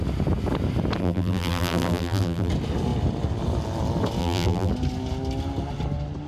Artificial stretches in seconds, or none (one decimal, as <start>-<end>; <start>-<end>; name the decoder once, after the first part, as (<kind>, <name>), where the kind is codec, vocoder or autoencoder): 1.0-2.5 (vocoder, BigVGAN v2); 4.2-4.7